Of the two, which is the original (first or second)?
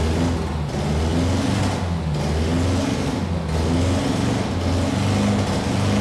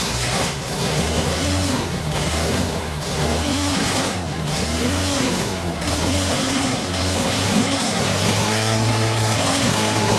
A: first